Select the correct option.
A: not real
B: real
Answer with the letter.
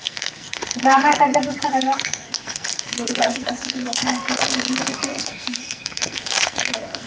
A